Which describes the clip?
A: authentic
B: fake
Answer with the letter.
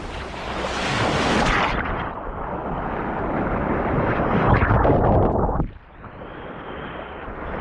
B